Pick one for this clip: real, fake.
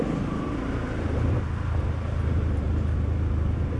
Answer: real